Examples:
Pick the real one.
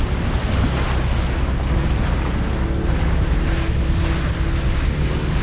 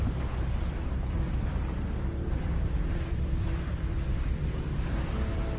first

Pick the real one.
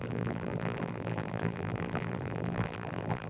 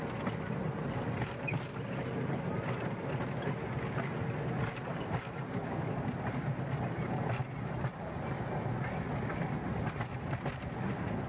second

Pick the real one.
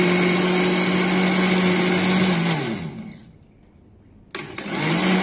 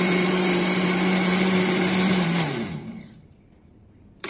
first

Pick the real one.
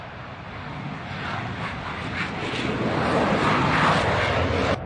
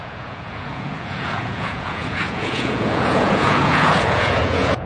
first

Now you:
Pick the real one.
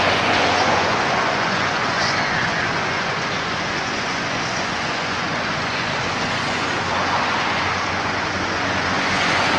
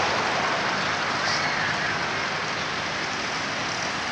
second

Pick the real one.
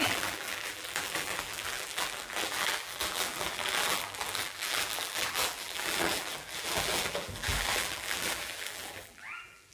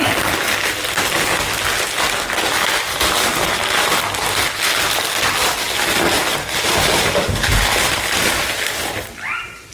second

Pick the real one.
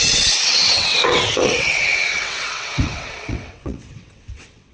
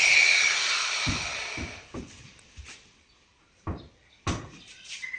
second